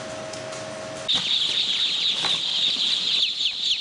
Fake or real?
real